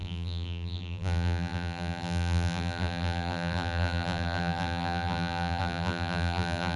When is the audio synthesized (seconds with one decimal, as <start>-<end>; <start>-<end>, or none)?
0.0-6.8